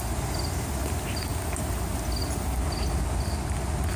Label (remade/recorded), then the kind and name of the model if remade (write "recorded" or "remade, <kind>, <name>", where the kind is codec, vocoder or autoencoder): recorded